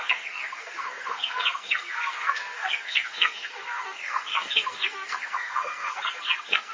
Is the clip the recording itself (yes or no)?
no